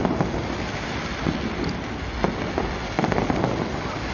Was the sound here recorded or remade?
recorded